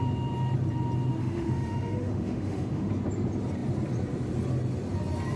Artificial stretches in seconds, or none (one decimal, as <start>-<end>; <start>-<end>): 1.2-2.9